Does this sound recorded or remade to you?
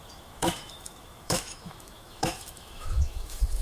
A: remade